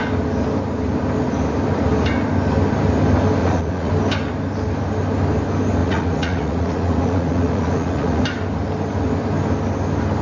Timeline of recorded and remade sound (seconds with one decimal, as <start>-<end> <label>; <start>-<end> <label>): 0.0-3.4 recorded; 3.4-3.9 remade; 3.9-5.8 recorded; 5.8-8.2 remade; 8.2-10.2 recorded